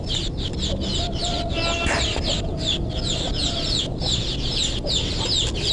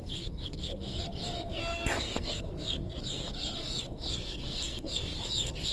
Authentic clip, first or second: first